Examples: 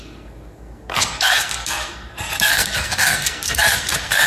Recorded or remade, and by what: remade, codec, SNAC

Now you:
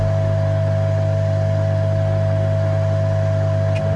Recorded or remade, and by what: recorded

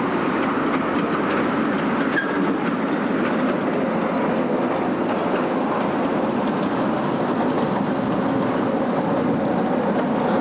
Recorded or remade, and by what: recorded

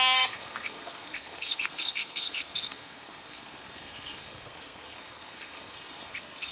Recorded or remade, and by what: remade, codec, SNAC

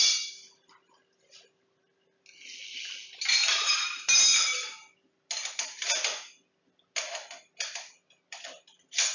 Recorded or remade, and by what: recorded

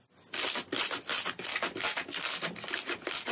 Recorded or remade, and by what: recorded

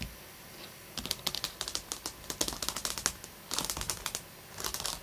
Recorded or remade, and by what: recorded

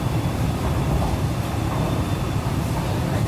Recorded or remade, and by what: recorded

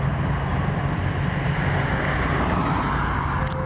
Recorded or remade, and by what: recorded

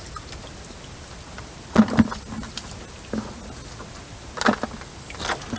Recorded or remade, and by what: recorded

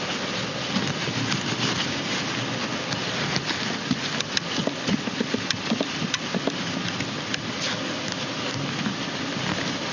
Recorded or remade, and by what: recorded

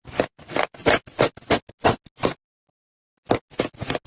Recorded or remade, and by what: recorded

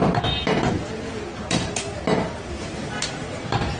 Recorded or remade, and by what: recorded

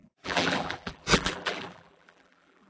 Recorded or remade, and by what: remade, vocoder, BigVGAN v2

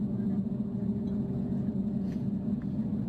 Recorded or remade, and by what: remade, vocoder, Vocos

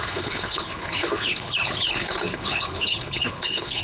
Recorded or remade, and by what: remade, codec, HILCodec